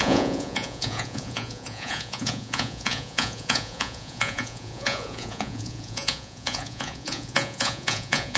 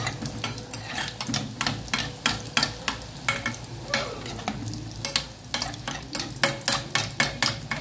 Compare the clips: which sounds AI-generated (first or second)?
first